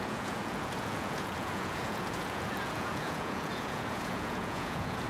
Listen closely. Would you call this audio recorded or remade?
remade